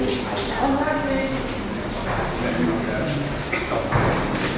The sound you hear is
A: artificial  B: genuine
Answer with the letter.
B